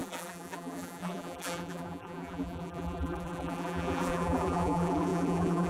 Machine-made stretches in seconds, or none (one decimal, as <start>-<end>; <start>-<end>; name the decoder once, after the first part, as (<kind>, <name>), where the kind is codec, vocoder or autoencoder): 0.0-5.7 (vocoder, BigVGAN v2)